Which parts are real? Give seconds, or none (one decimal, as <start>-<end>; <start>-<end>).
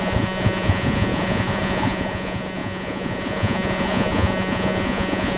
none